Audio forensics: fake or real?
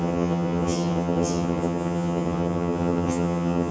fake